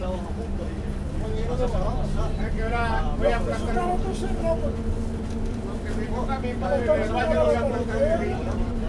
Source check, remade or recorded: remade